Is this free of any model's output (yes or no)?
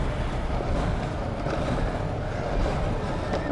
yes